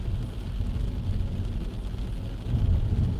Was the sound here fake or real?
real